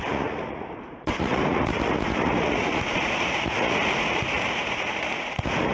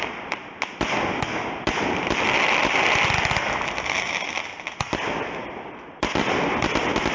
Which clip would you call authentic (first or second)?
second